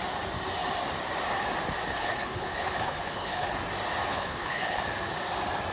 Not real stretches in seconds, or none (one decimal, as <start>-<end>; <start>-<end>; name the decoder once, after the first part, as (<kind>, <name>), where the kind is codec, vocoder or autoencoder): 1.9-3.5 (codec, HILCodec); 4.1-4.8